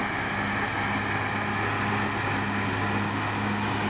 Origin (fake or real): real